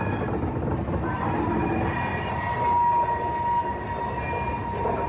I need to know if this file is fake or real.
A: real